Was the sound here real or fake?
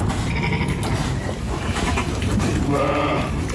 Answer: real